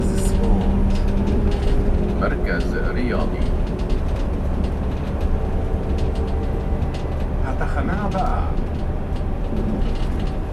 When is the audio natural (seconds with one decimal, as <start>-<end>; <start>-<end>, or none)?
0.0-10.5